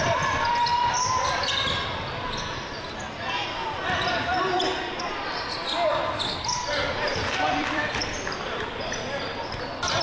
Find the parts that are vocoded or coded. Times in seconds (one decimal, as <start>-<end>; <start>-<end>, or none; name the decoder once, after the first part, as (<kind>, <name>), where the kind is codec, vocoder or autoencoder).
0.0-0.7 (vocoder, BigVGAN v2); 2.4-4.3; 6.2-10.0